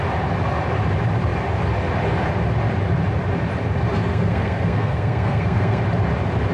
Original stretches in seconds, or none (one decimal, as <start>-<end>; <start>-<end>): 0.0-3.9; 5.8-6.5